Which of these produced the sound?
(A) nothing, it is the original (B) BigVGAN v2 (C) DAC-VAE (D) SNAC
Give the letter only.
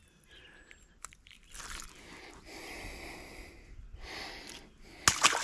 A